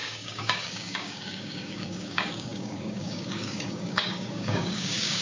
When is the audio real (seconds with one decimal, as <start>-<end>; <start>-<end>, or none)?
none